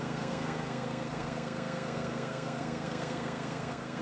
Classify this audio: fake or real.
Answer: fake